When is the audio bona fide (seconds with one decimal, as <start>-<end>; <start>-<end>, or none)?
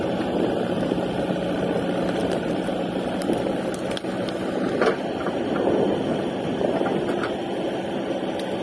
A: 0.0-2.2; 3.0-8.6